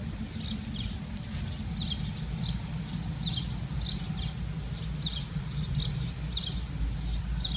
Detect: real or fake real